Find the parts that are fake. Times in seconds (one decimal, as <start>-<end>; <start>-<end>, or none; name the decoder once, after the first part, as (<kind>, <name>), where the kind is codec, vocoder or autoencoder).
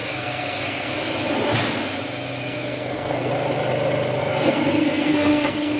0.0-0.9 (codec, SNAC); 2.4-3.3; 4.2-5.8